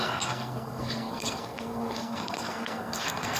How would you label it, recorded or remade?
remade